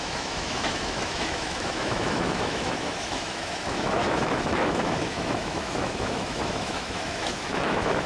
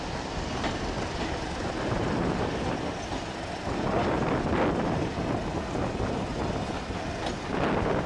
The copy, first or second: first